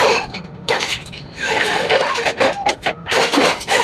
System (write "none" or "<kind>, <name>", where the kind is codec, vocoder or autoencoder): autoencoder, DAC-VAE